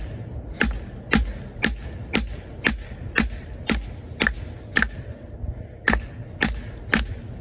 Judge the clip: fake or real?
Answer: real